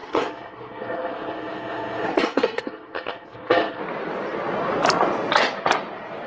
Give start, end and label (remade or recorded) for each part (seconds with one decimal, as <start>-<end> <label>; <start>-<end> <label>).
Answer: 0.0-3.8 remade; 3.8-6.3 recorded